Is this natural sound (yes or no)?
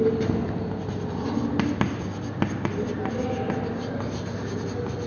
yes